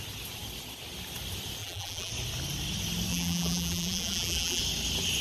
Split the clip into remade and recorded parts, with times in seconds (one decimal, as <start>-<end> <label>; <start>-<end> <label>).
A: 0.0-1.6 recorded; 1.6-2.1 remade; 2.1-3.1 recorded; 3.1-4.6 remade; 4.6-5.2 recorded